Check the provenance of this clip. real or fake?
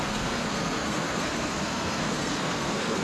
fake